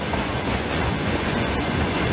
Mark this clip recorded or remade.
remade